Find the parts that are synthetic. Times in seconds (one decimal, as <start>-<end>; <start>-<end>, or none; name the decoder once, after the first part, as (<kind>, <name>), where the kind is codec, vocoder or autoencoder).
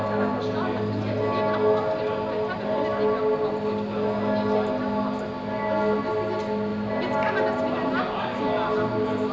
6.7-8.0 (vocoder, BigVGAN v2)